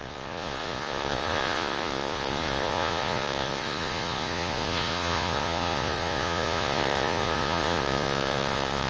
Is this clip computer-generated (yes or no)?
yes